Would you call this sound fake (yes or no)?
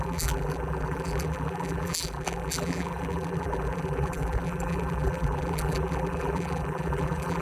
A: yes